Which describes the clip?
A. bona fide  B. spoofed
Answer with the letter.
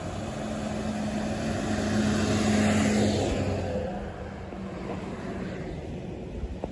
A